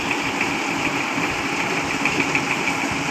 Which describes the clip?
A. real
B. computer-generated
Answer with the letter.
A